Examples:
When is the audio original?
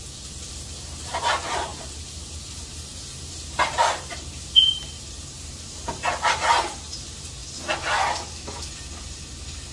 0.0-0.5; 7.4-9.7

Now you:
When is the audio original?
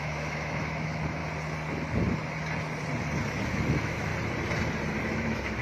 1.2-3.5; 4.1-5.0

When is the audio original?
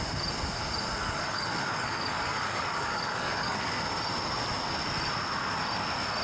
0.0-1.0; 3.6-6.2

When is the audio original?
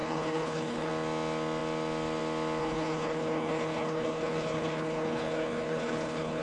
0.9-2.6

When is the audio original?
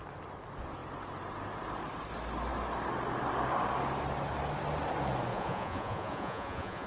0.0-5.3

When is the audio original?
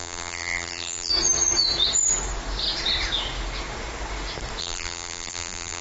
1.1-4.6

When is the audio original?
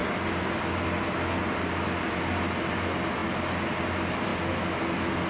0.0-5.3